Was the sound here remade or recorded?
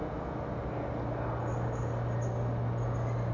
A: recorded